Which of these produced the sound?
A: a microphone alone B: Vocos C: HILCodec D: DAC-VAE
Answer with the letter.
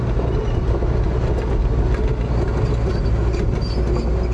A